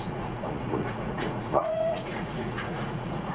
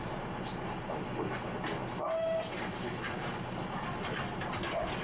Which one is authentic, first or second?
second